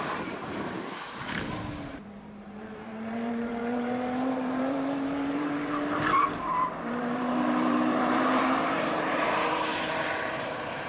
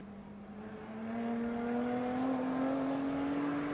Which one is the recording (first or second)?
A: second